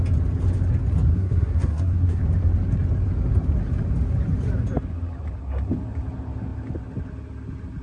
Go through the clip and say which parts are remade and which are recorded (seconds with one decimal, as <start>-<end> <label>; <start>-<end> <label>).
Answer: 0.0-1.1 recorded; 1.1-2.2 remade; 2.2-7.8 recorded